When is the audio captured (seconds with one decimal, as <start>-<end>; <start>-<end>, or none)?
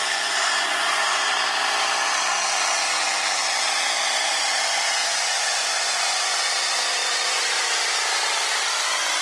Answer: 1.3-5.0; 6.5-7.0; 7.6-9.2